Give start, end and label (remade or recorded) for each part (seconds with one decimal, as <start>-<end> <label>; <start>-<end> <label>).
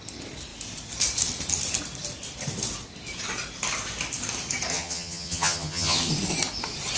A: 0.0-4.7 recorded; 4.7-6.1 remade; 6.1-7.0 recorded